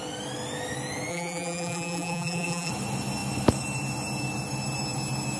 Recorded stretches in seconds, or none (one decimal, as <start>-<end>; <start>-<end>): 0.0-1.1; 2.7-5.4